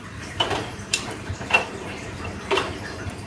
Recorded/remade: remade